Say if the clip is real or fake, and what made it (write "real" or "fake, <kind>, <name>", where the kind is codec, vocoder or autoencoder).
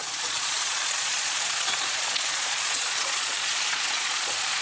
fake, vocoder, Vocos